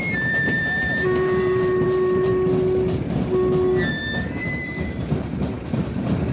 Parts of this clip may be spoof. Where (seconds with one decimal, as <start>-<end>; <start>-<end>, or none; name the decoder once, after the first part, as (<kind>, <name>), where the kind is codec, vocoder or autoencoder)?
0.0-2.3 (vocoder, BigVGAN v2); 3.9-6.3